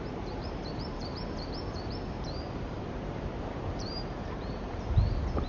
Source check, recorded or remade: remade